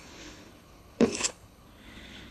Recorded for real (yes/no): no